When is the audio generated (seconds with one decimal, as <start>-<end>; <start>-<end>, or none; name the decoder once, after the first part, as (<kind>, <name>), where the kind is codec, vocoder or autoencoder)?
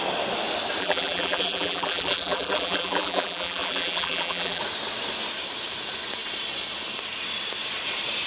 0.8-4.6 (vocoder, BigVGAN v2)